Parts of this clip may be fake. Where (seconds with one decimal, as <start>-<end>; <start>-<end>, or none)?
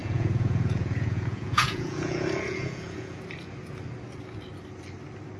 0.0-3.2